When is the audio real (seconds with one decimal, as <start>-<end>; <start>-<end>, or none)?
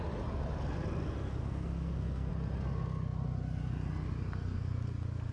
0.0-1.4; 2.3-5.3